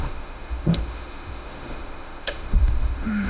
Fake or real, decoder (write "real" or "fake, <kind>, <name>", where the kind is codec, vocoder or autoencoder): fake, autoencoder, DAC-VAE